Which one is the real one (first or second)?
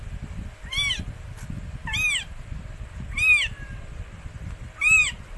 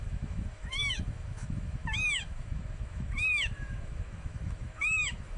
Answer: first